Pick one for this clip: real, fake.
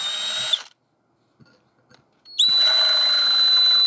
real